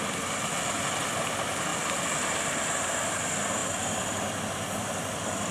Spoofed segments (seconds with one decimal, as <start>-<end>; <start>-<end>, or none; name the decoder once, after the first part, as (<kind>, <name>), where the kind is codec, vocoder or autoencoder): 0.0-0.5 (vocoder, BigVGAN v2); 3.6-5.5